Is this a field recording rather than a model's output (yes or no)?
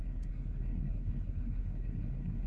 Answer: no